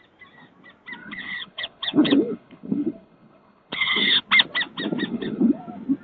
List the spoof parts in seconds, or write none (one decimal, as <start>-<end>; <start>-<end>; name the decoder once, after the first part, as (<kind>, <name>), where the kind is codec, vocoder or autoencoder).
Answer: 1.0-4.2 (codec, HILCodec); 5.1-5.6